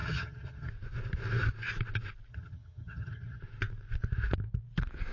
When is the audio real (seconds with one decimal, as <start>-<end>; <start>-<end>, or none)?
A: 0.7-2.3; 3.4-5.1